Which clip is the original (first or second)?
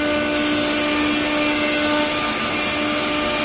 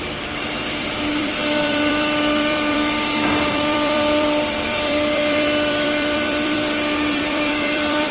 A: first